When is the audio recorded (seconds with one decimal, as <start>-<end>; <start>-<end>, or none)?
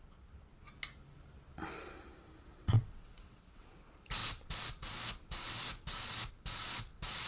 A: 0.0-2.5; 3.8-7.3